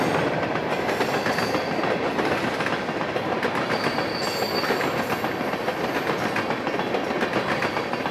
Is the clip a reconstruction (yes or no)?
no